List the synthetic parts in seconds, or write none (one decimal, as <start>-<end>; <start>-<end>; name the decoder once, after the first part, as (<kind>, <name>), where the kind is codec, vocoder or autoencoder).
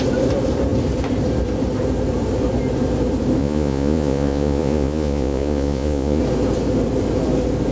3.4-6.2 (vocoder, Vocos)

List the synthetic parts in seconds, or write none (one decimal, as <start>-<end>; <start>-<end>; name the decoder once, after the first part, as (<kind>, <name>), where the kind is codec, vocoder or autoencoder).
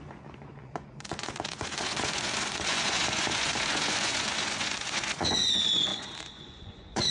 0.0-7.1 (vocoder, Vocos)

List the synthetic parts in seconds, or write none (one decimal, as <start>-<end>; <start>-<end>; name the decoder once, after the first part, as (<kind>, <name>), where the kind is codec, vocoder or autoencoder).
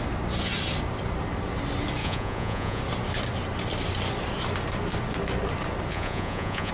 2.0-2.8 (vocoder, Vocos); 5.9-6.7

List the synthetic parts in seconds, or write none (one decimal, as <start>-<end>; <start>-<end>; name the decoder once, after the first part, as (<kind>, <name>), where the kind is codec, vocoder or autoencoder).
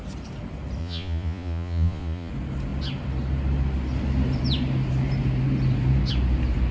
0.8-2.3 (vocoder, Vocos)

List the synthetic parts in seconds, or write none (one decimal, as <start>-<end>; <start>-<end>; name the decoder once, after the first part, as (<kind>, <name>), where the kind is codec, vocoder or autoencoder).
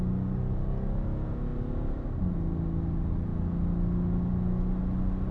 none